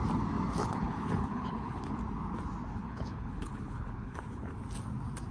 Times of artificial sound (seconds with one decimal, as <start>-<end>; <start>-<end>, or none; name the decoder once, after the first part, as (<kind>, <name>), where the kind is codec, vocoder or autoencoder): 0.6-2.0 (codec, HILCodec); 2.8-4.6